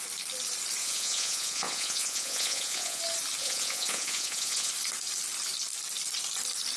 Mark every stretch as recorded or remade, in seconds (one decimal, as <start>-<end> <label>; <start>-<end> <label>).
0.0-0.8 recorded; 0.8-3.0 remade; 3.0-3.4 recorded; 3.4-4.7 remade; 4.7-6.8 recorded